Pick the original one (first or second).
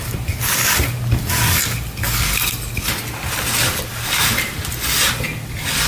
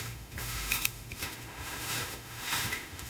first